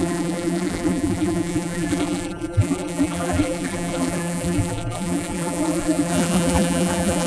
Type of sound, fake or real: fake